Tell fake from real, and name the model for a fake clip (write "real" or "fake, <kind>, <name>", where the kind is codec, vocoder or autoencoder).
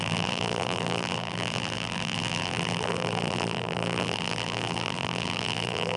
fake, vocoder, BigVGAN v2